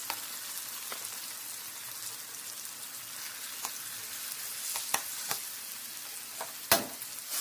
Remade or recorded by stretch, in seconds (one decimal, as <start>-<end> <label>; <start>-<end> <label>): 0.0-7.4 recorded

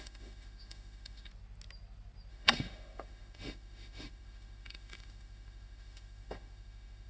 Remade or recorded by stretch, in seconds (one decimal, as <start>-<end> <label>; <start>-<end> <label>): 0.0-1.3 remade; 1.3-2.3 recorded; 2.3-7.1 remade